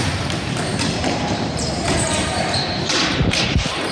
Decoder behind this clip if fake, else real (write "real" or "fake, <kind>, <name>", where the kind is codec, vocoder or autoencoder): fake, vocoder, BigVGAN v2